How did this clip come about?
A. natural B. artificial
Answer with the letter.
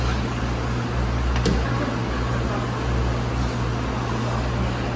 A